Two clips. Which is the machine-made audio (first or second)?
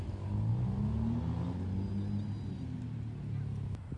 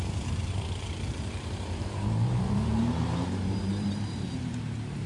second